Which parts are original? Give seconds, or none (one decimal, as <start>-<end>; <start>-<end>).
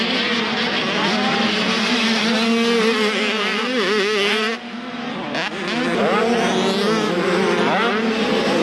0.0-8.6